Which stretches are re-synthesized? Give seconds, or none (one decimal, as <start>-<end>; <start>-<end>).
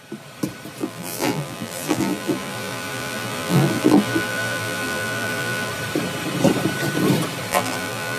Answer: 0.8-5.7; 7.5-8.2